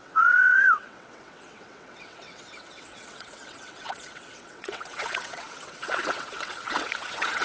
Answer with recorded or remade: remade